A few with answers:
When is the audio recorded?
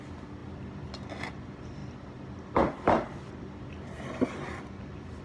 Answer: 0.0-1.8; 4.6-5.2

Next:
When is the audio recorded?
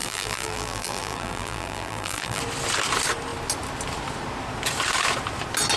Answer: 2.4-5.8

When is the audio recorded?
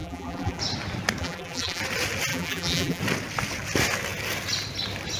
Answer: 0.6-1.2; 1.8-2.3; 3.0-5.2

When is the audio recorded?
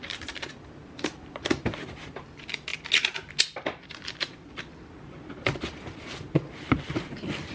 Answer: 2.7-5.4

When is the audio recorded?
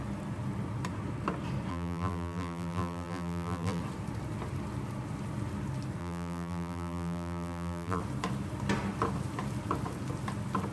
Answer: 0.0-1.7; 3.8-6.0; 8.0-10.7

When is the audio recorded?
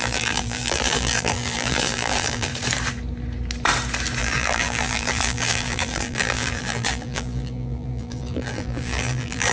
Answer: 2.5-4.2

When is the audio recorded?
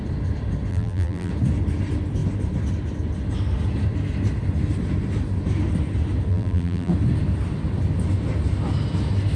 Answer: 0.0-0.7; 1.3-6.3; 6.9-9.4